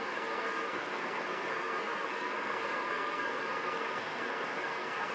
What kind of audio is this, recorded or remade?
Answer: remade